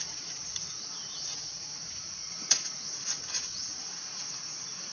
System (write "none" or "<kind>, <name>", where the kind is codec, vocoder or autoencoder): vocoder, Vocos